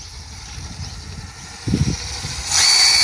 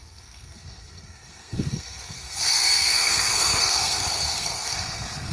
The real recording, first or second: first